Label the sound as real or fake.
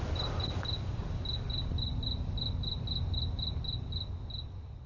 real